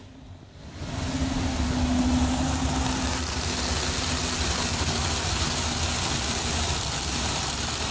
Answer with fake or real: real